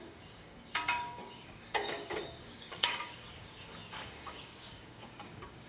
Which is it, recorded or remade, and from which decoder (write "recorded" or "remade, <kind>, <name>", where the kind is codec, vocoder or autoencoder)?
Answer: remade, codec, DAC